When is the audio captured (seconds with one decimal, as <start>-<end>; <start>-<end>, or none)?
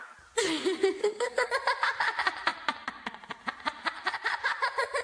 0.0-1.0; 1.5-5.0